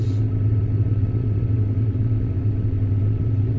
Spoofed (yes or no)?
yes